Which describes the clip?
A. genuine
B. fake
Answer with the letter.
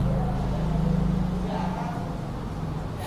A